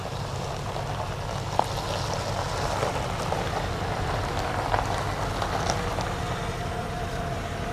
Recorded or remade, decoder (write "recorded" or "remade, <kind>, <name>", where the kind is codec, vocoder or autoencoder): recorded